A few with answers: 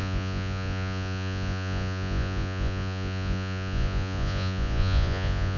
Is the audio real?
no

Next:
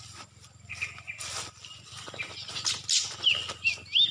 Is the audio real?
yes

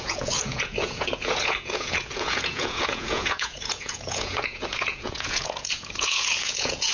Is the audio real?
no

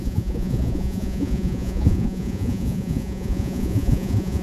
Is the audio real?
no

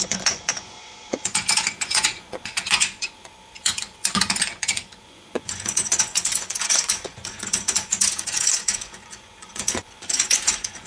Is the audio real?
no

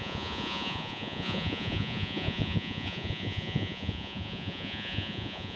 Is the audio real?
no